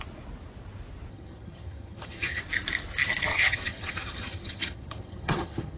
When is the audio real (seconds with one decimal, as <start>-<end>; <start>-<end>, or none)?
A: 0.0-1.1; 2.4-3.3